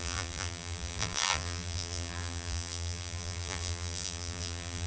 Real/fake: fake